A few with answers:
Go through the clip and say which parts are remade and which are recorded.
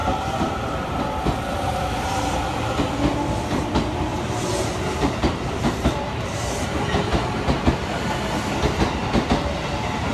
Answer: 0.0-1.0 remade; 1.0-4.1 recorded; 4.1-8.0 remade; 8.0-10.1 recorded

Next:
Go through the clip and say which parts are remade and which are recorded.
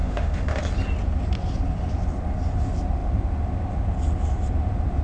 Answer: 0.0-0.6 remade; 0.6-5.0 recorded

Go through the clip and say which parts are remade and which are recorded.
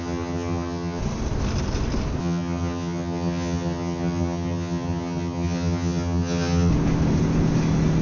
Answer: 0.0-1.0 remade; 1.0-2.2 recorded; 2.2-6.7 remade; 6.7-8.0 recorded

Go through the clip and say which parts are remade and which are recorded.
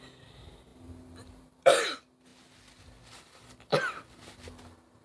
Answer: 0.0-5.0 remade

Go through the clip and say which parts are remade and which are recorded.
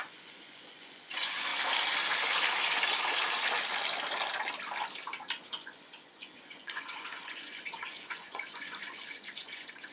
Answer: 0.0-1.5 remade; 1.5-5.5 recorded; 5.5-9.9 remade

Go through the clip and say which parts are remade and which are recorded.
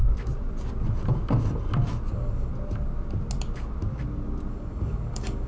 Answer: 0.0-2.1 recorded; 2.1-2.5 remade; 2.5-4.5 recorded; 4.5-5.5 remade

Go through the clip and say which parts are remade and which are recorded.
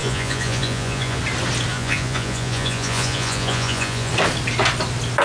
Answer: 0.0-1.2 remade; 1.2-1.7 recorded; 1.7-4.1 remade; 4.1-5.2 recorded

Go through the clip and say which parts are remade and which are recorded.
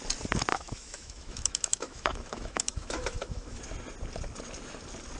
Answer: 0.0-0.5 recorded; 0.5-3.6 remade; 3.6-5.2 recorded